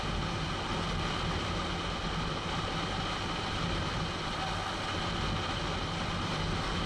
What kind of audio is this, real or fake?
real